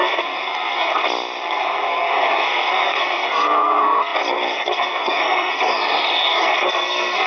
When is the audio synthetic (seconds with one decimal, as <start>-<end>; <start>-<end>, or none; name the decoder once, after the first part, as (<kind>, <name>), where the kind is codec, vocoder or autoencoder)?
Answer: 0.0-0.9 (codec, SNAC); 1.5-7.3